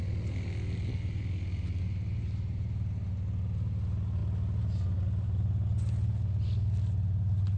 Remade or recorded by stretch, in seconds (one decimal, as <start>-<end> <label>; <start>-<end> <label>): 0.0-7.6 recorded